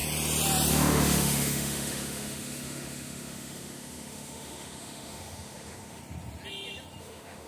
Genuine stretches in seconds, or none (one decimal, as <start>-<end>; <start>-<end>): 0.0-0.7; 6.0-7.0